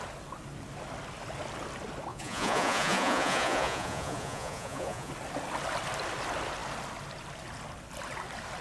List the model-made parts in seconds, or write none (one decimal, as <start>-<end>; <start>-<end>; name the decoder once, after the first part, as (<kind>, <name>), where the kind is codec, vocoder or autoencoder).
2.1-5.1 (vocoder, Vocos)